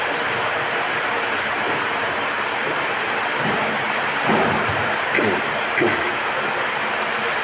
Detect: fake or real fake